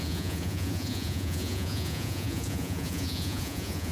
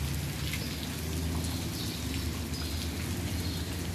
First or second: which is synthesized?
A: first